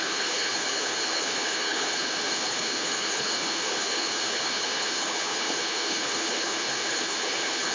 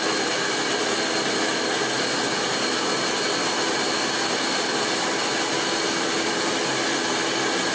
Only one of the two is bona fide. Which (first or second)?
second